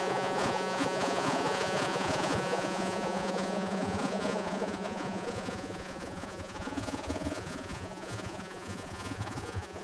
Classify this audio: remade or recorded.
remade